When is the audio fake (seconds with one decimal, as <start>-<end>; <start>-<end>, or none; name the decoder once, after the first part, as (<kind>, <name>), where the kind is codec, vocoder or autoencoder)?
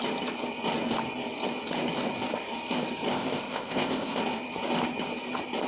3.1-4.2 (codec, ZipCodec)